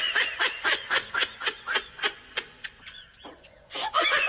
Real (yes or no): no